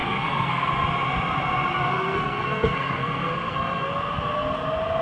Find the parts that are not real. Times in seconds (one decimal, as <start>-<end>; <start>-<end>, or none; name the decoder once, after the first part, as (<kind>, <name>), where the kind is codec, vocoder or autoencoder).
0.0-0.7 (codec, SNAC); 1.9-3.9